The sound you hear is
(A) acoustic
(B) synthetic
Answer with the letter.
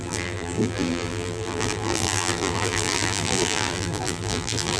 B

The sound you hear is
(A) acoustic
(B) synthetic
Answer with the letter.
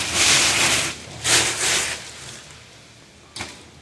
A